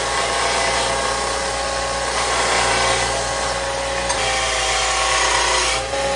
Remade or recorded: recorded